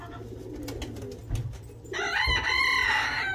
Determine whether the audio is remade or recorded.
recorded